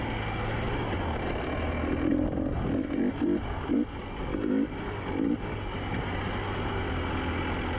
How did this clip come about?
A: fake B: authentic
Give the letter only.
B